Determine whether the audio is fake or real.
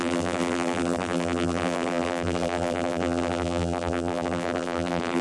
fake